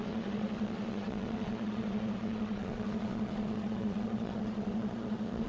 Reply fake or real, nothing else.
fake